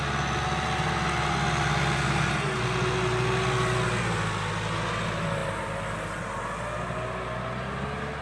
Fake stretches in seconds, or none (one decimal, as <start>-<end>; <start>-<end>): none